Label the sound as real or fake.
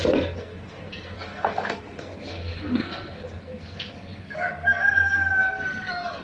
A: fake